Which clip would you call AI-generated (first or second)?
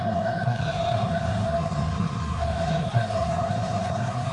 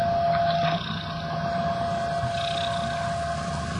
first